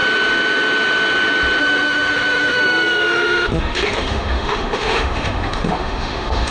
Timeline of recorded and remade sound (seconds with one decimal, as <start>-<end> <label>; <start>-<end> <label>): 0.0-1.6 recorded; 1.6-6.5 remade